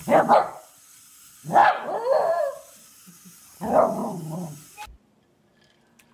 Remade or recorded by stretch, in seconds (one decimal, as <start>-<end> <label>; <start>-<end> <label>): 0.0-6.1 recorded